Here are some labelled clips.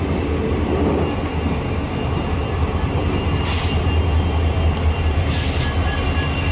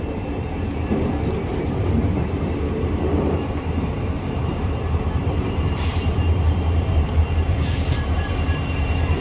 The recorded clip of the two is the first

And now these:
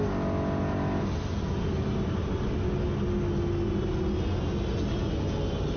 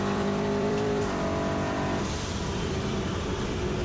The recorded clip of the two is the first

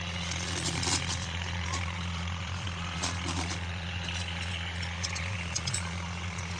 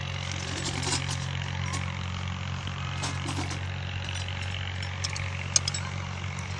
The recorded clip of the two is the second